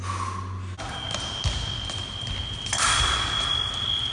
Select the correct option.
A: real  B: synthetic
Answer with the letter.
A